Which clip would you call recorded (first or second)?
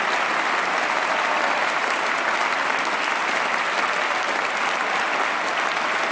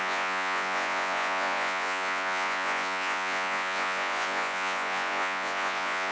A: first